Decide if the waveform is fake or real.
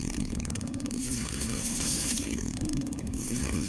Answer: fake